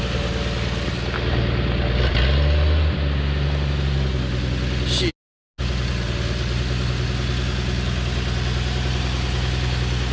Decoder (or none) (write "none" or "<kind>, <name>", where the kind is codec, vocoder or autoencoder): none